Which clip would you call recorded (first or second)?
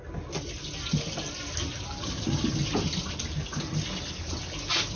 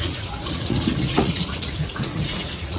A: first